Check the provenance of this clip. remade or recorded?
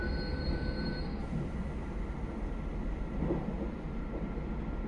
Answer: recorded